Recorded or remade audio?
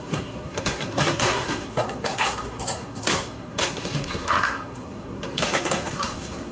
remade